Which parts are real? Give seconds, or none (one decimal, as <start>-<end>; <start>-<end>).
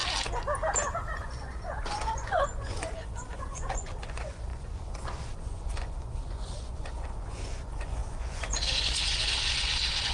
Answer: 0.0-1.2